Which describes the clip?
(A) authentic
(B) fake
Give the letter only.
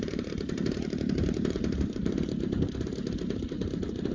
B